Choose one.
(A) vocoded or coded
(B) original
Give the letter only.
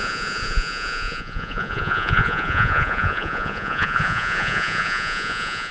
A